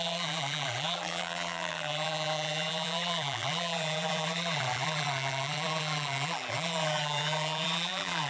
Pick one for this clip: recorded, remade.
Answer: remade